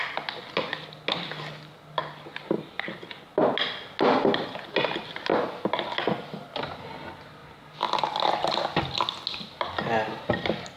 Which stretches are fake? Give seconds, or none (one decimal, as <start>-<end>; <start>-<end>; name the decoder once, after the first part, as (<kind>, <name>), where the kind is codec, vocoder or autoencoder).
none